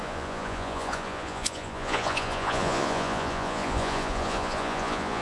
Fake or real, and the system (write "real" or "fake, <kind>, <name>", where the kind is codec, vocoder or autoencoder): fake, vocoder, Vocos